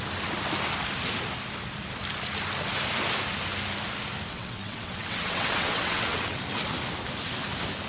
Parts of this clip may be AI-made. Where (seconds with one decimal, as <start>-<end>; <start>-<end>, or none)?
4.3-6.4